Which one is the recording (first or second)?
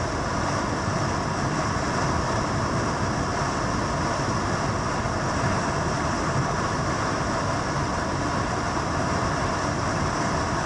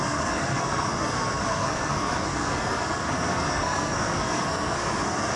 first